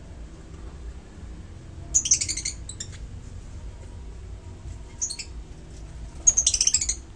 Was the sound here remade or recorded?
recorded